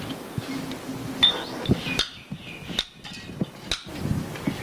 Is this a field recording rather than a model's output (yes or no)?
yes